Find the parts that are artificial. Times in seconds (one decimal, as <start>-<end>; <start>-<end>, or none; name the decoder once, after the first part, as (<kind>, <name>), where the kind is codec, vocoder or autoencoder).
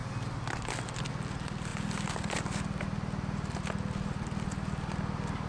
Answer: none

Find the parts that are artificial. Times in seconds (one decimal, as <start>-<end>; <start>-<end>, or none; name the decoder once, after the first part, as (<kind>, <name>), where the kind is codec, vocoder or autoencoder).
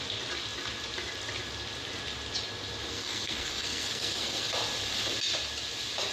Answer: 2.9-4.5 (codec, SNAC)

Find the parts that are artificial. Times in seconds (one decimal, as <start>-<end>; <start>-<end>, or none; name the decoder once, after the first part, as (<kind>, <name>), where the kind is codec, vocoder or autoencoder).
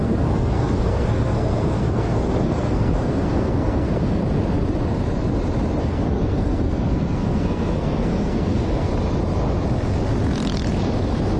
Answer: 0.0-4.2 (codec, SNAC); 5.8-8.9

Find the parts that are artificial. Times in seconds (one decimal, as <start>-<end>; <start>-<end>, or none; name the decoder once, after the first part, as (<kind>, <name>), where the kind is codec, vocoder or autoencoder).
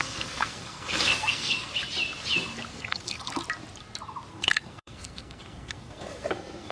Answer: 0.0-1.7 (codec, SNAC); 2.7-3.4; 4.3-6.7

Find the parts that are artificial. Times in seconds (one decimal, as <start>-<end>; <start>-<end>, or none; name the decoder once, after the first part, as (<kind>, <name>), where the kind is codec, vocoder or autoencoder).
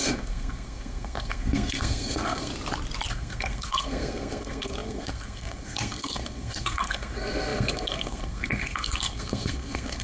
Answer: 0.0-2.5 (codec, SNAC); 3.1-10.0